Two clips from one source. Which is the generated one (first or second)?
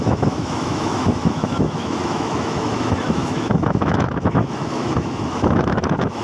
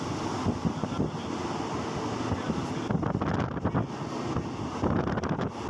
first